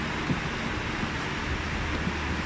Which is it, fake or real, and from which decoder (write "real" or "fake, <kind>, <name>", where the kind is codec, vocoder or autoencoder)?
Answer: real